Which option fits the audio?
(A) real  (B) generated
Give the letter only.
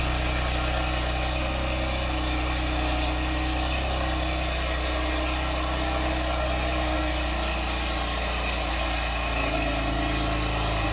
A